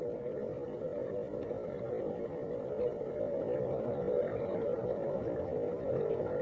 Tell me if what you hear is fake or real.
real